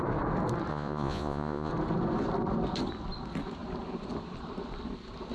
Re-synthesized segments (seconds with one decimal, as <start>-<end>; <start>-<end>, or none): 0.7-1.7